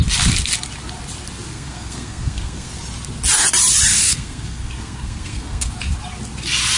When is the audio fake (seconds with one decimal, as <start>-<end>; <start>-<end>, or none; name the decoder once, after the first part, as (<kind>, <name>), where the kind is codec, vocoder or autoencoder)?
1.5-2.8 (codec, SNAC); 3.9-5.7